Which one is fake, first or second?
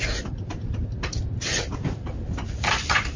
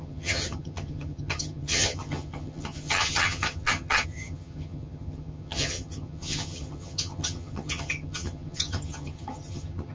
second